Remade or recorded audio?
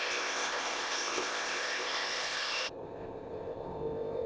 remade